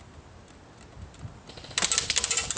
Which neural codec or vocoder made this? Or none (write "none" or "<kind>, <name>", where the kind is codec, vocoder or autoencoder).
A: none